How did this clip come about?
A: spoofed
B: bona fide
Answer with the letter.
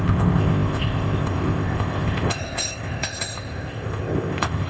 A